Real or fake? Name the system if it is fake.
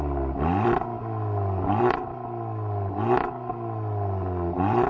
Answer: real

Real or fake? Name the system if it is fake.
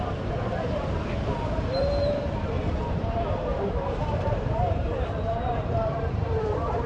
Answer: fake, vocoder, BigVGAN v2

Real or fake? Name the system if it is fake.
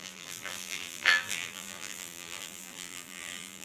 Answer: fake, vocoder, BigVGAN v2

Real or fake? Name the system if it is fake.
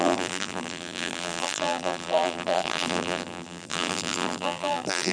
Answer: fake, vocoder, BigVGAN v2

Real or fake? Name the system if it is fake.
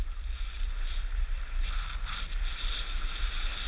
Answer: real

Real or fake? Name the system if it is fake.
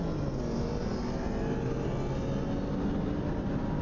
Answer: real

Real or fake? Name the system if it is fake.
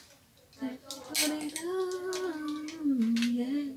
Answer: real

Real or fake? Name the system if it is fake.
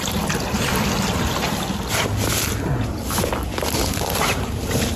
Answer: fake, vocoder, BigVGAN v2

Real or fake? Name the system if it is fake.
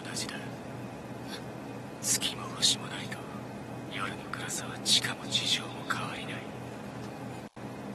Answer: real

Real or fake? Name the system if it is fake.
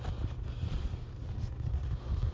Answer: real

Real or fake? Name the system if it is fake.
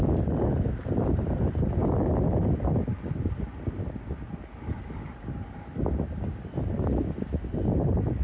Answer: real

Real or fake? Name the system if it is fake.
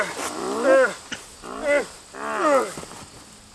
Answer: real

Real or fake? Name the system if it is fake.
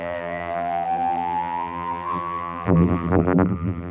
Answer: fake, vocoder, BigVGAN v2